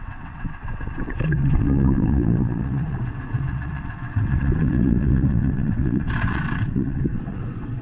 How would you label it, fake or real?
fake